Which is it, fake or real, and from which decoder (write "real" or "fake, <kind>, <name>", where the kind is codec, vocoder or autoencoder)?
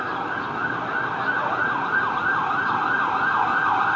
real